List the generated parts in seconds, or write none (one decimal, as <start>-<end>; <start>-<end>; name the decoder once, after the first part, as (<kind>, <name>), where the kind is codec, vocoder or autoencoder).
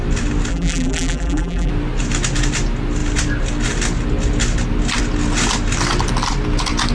0.5-1.7 (vocoder, BigVGAN v2)